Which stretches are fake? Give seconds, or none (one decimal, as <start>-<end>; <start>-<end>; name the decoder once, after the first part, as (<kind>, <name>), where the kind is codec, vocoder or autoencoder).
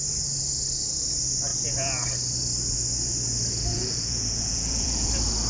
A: 3.7-5.1 (vocoder, Vocos)